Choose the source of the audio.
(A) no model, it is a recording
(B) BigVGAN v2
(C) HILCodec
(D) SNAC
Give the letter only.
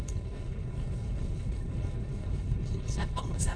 C